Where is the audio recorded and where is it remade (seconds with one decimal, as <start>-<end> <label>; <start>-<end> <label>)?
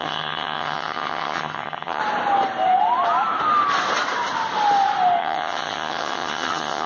0.0-2.0 remade; 2.0-5.2 recorded; 5.2-6.9 remade